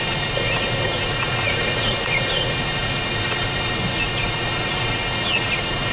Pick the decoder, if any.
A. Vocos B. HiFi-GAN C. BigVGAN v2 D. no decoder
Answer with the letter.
A